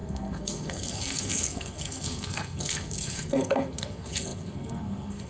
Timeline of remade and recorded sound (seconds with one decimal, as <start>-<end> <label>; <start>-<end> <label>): 0.0-5.3 remade